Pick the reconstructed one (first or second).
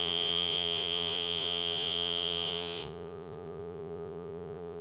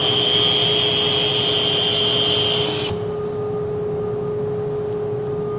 first